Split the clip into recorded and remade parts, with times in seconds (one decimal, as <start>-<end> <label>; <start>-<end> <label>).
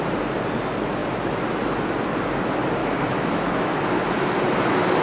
0.0-2.8 recorded; 2.8-3.7 remade; 3.7-5.0 recorded